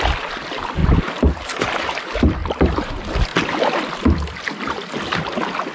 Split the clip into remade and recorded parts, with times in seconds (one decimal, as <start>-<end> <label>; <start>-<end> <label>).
0.0-2.4 recorded; 2.4-2.9 remade; 2.9-5.7 recorded